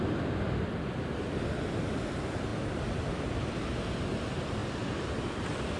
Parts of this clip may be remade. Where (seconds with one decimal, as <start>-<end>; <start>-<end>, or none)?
none